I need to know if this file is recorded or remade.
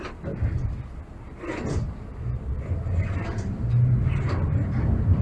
recorded